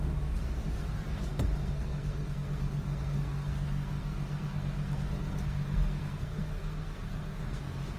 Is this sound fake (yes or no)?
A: yes